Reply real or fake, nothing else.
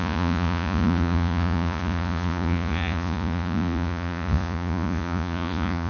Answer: fake